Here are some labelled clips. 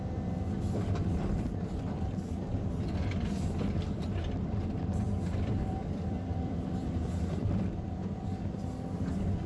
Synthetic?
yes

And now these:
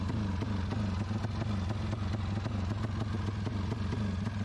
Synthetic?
no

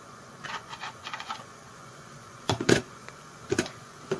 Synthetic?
yes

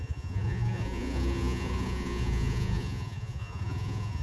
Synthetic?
yes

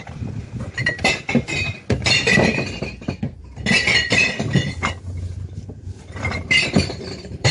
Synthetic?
yes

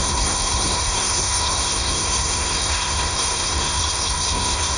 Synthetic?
yes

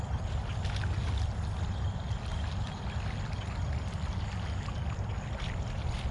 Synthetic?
no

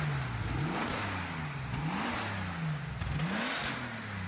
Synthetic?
no